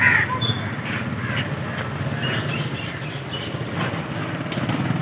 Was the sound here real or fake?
real